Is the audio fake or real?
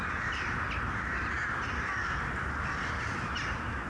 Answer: real